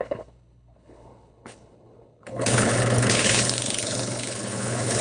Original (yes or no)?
no